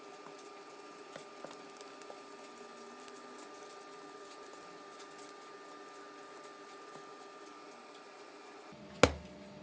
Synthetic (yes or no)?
no